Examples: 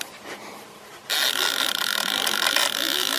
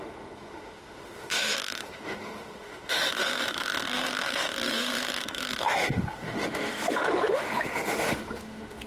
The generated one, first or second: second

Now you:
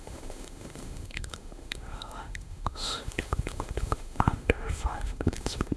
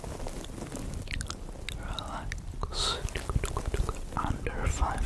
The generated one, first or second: first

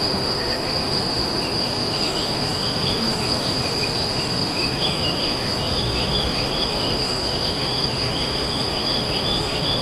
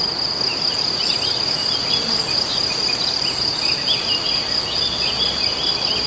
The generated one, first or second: first